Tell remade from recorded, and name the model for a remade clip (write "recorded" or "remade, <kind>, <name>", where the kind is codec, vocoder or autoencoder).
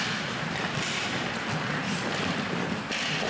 recorded